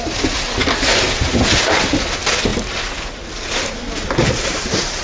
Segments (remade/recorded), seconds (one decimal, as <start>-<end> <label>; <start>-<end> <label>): 0.0-4.2 recorded; 4.2-5.0 remade